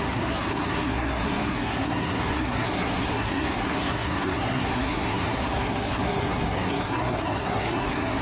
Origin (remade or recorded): remade